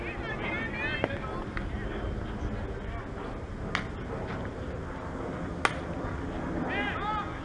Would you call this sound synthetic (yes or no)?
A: no